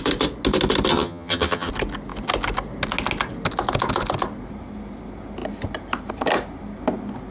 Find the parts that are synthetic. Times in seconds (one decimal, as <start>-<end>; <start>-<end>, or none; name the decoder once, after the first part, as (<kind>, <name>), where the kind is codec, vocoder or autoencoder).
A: 0.9-1.7 (vocoder, HiFi-GAN)